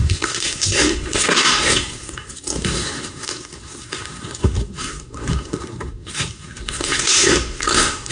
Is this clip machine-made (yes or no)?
yes